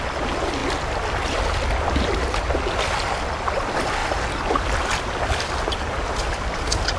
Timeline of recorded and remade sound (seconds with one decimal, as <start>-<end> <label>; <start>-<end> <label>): 0.0-7.0 recorded